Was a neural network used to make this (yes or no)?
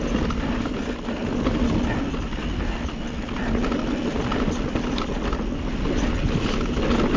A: no